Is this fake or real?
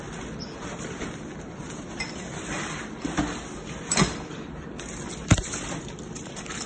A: fake